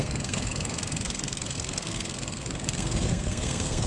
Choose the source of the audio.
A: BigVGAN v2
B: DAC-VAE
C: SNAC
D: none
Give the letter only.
C